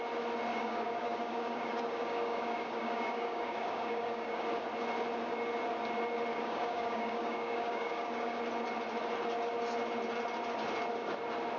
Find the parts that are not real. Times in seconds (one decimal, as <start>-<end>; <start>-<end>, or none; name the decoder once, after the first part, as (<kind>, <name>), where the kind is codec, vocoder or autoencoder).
0.5-4.4 (codec, DAC); 6.3-8.4